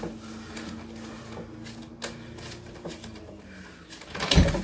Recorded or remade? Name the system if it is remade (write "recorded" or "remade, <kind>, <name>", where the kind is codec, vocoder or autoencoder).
recorded